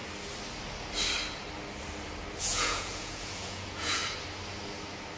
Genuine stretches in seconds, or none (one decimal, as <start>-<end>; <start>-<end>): 0.0-2.4; 4.0-5.2